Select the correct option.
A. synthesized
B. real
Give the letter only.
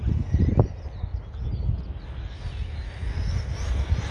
B